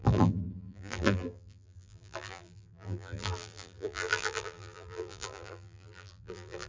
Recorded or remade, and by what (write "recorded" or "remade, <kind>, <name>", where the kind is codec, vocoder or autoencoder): remade, vocoder, BigVGAN v2